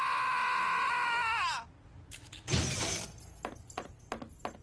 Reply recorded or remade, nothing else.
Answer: recorded